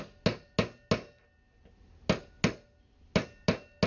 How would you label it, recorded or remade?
recorded